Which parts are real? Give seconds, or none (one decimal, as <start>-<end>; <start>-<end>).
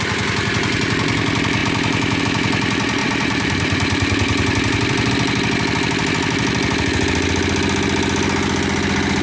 0.0-3.0; 5.1-9.2